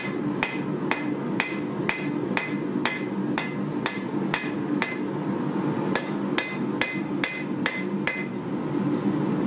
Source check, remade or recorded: recorded